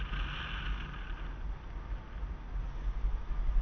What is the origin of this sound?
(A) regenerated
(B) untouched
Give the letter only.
B